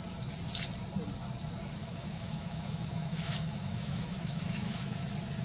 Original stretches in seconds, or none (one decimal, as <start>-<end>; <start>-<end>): 0.0-1.8; 5.0-5.4